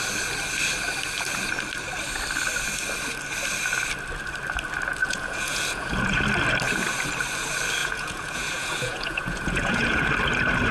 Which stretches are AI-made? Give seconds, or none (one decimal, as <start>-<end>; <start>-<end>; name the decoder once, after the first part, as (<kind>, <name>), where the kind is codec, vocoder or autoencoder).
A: 5.0-6.2 (vocoder, Vocos); 7.8-10.1